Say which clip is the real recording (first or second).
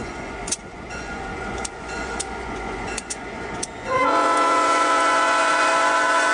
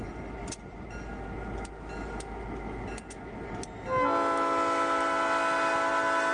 second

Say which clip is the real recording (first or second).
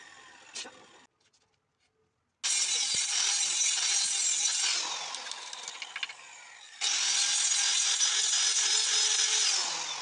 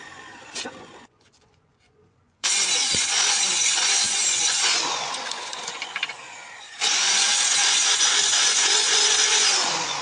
first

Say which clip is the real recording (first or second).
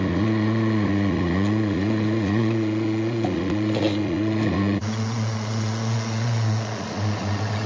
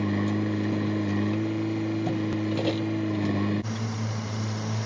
second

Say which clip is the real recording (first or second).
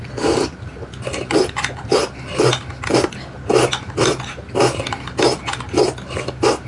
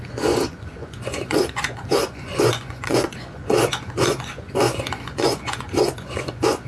first